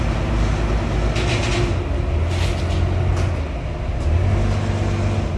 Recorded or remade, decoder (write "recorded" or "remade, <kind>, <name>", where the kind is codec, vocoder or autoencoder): recorded